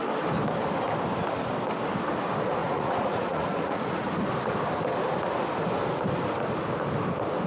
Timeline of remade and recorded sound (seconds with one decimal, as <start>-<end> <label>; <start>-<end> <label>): 0.0-2.6 recorded; 2.6-4.1 remade; 4.1-7.5 recorded